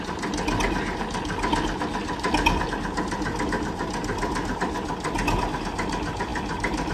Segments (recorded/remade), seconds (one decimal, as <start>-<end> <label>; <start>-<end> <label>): 0.0-6.9 recorded